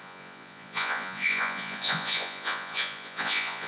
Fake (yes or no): yes